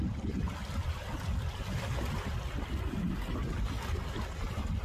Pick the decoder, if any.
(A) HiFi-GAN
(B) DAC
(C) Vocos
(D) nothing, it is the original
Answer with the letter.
D